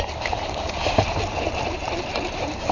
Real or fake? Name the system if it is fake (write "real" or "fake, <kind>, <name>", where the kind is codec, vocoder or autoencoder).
fake, vocoder, BigVGAN v2